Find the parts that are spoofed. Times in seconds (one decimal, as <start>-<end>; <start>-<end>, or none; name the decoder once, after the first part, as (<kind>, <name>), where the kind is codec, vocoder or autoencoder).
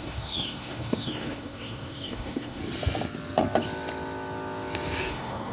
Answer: 0.0-2.6 (codec, SNAC); 5.1-5.5